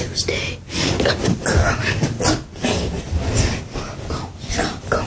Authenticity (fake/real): real